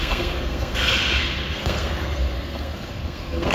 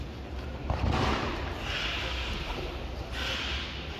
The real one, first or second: second